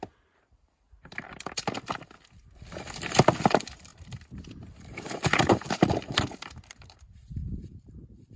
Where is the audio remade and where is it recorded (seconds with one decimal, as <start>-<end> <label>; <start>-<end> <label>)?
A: 0.0-1.3 remade; 1.3-3.5 recorded; 3.5-3.9 remade; 3.9-4.9 recorded; 4.9-8.4 remade

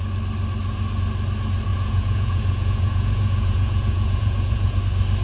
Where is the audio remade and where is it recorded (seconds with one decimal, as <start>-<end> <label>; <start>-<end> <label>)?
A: 0.0-1.7 recorded; 1.7-4.8 remade; 4.8-5.2 recorded

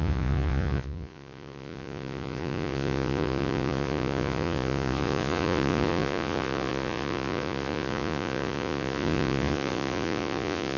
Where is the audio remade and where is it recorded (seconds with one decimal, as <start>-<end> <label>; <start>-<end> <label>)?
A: 0.0-10.8 remade

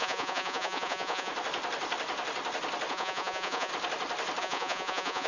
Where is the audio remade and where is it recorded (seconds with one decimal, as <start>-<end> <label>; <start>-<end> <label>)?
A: 0.0-1.3 remade; 1.3-2.9 recorded; 2.9-3.7 remade; 3.7-4.4 recorded; 4.4-5.3 remade

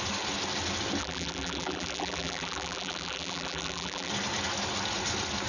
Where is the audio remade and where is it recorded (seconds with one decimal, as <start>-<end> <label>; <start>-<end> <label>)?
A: 0.0-1.0 recorded; 1.0-4.1 remade; 4.1-5.5 recorded

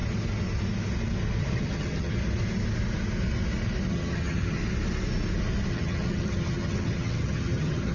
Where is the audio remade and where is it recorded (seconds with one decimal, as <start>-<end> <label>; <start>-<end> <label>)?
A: 0.0-1.4 recorded; 1.4-2.2 remade; 2.2-3.9 recorded; 3.9-4.6 remade; 4.6-5.7 recorded; 5.7-7.9 remade